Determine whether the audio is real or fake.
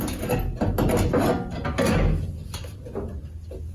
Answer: real